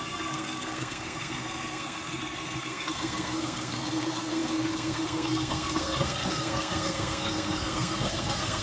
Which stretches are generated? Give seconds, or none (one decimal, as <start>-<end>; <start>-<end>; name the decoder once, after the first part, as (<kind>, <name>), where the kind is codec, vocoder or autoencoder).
0.0-8.6 (codec, SNAC)